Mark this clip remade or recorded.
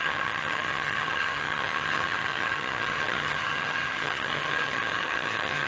remade